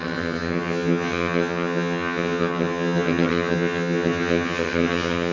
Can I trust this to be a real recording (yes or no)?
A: no